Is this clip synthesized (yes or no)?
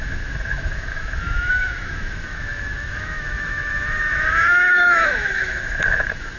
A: yes